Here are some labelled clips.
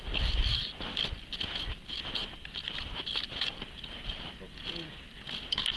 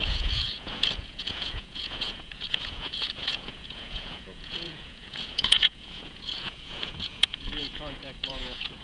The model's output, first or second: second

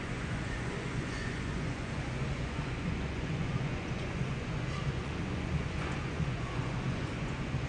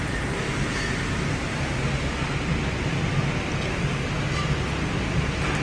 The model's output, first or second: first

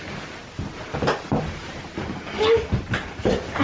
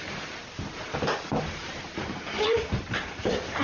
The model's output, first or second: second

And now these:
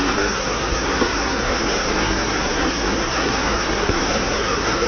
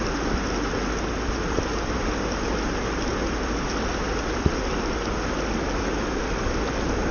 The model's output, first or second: first